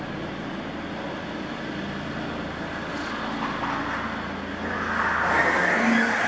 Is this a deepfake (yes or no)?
no